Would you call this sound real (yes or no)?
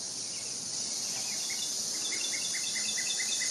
yes